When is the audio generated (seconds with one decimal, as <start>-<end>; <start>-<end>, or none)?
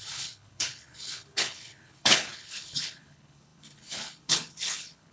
0.0-5.1